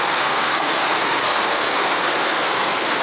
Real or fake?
fake